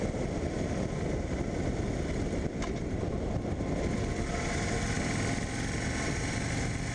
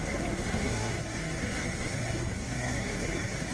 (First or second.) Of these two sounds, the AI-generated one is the second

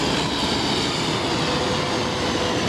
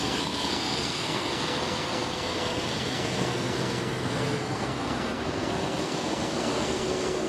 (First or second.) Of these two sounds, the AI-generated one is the second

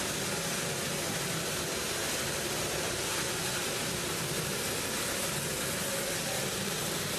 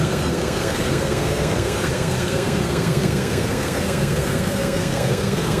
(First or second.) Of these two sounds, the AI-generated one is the second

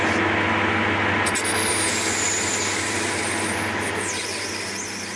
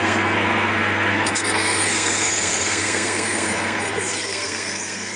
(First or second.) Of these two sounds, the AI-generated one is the second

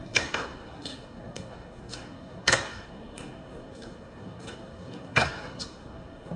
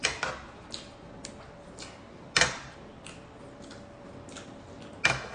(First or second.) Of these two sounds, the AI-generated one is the first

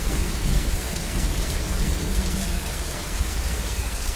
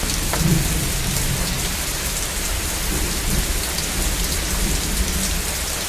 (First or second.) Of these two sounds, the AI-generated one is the first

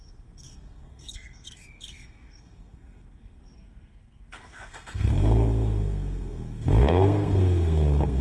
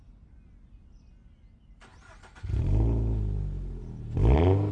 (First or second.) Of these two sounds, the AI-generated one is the first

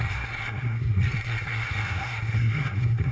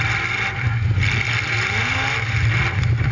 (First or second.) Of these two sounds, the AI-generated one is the first